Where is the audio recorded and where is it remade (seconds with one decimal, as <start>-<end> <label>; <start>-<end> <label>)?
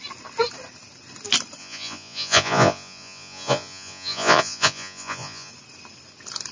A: 0.0-1.6 recorded; 1.6-5.5 remade; 5.5-6.5 recorded